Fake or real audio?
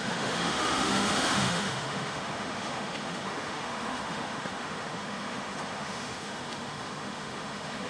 fake